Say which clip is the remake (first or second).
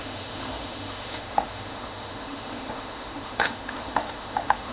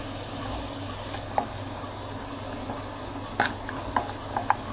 first